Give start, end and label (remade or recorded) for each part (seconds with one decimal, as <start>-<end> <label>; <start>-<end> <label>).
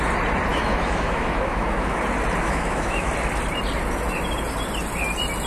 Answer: 0.0-0.5 recorded; 0.5-2.0 remade; 2.0-2.4 recorded; 2.4-3.1 remade; 3.1-5.5 recorded